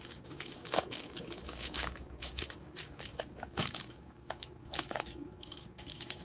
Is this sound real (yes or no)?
no